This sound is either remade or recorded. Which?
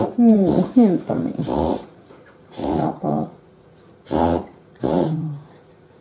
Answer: remade